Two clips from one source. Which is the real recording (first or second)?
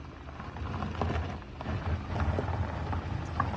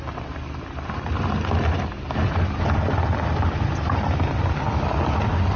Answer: first